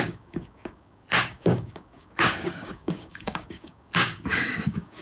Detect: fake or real fake